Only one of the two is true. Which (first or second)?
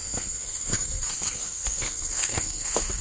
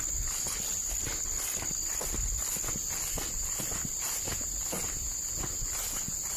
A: second